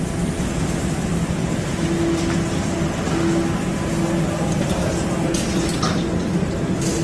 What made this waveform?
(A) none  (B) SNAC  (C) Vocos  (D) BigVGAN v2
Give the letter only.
A